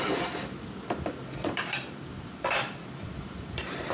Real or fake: fake